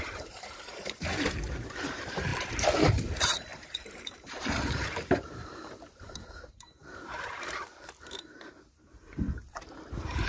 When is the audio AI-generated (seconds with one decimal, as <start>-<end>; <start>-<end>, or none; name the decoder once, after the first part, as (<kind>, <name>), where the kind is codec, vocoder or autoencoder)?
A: 0.0-2.3 (vocoder, BigVGAN v2); 2.9-10.3

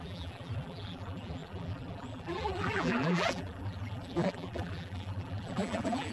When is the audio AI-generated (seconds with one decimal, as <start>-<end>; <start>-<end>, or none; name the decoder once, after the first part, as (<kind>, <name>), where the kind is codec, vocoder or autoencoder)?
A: 0.0-6.1 (vocoder, BigVGAN v2)

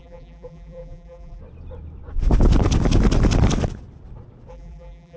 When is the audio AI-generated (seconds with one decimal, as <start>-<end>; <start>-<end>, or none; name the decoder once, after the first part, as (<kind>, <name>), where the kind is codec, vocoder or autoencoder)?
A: 0.0-1.4 (vocoder, BigVGAN v2); 4.5-5.2